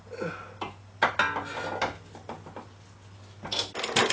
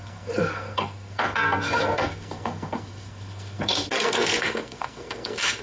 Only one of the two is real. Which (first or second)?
first